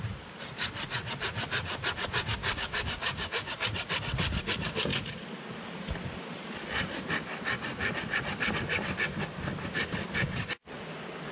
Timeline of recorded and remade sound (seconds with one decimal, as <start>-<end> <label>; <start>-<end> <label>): 0.0-2.4 recorded; 2.4-3.5 remade; 3.5-11.3 recorded